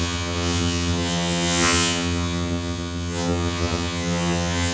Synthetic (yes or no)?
yes